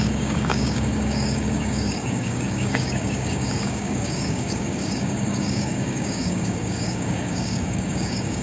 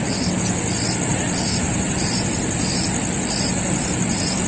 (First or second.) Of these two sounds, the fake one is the first